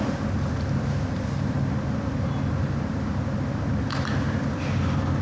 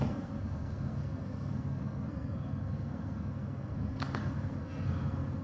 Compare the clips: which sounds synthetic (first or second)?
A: second